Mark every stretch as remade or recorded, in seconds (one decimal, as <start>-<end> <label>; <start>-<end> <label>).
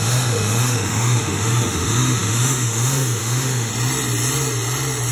0.0-3.7 remade; 3.7-5.1 recorded